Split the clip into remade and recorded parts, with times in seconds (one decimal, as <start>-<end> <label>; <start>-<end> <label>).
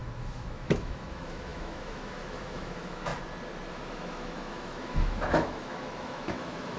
0.0-3.1 remade; 3.1-3.7 recorded; 3.7-6.8 remade